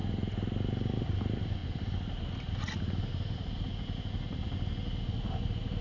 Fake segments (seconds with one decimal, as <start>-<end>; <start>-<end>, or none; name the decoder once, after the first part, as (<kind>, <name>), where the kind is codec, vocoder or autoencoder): 1.6-3.7 (vocoder, BigVGAN v2)